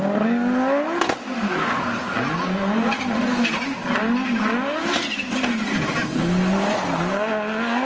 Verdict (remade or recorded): recorded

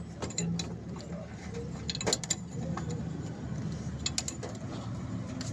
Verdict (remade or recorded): recorded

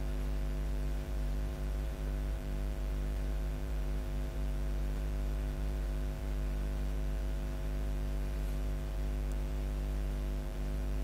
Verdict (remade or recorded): remade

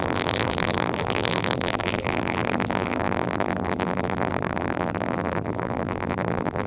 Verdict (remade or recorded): remade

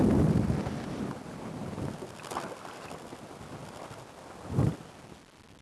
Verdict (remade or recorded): recorded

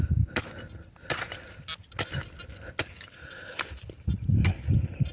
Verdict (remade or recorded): recorded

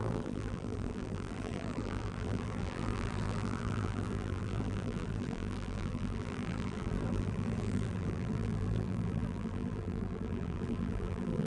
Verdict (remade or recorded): remade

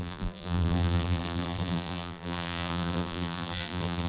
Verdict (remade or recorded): remade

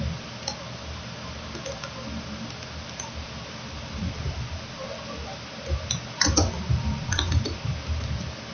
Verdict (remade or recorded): recorded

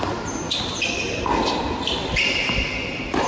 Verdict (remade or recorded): remade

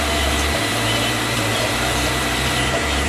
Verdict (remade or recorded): remade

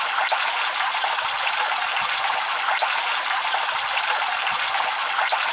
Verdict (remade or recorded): recorded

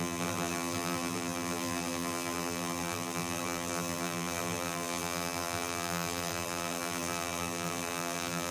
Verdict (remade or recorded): remade